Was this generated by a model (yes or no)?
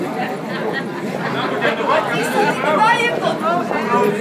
no